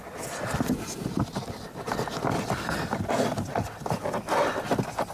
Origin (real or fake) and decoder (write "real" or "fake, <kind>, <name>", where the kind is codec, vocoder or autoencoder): real